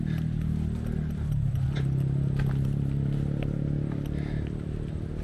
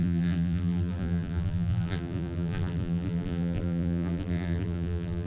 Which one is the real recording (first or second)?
first